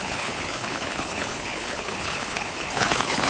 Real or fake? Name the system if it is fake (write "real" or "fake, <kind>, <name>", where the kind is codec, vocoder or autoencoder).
fake, codec, HILCodec